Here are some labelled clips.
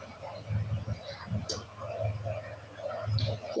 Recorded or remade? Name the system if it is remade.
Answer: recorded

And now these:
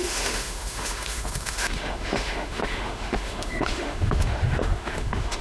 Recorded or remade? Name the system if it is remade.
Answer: remade, autoencoder, DAC-VAE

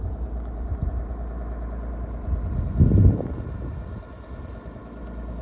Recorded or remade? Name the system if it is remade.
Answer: recorded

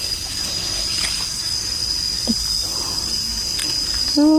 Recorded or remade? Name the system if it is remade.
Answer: recorded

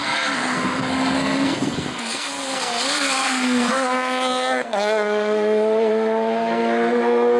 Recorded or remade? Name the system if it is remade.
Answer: remade, codec, SNAC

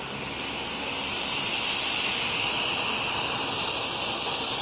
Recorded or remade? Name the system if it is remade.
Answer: recorded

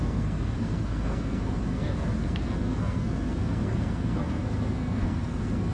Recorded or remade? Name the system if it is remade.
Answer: remade, codec, SNAC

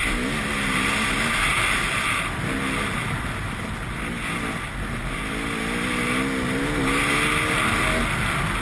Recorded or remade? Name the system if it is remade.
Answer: recorded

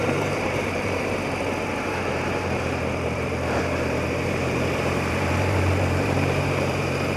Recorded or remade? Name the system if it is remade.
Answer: remade, vocoder, BigVGAN v2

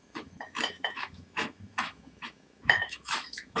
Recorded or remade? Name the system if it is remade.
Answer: remade, autoencoder, DAC-VAE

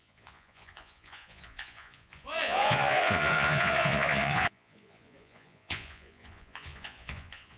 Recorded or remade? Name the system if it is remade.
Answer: remade, vocoder, Vocos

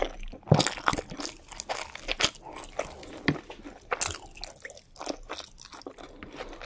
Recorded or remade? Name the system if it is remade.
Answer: recorded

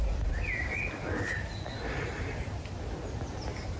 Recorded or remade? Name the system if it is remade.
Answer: recorded